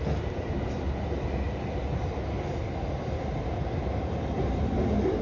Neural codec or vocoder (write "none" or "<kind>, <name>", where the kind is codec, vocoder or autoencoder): none